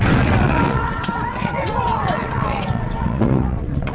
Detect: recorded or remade remade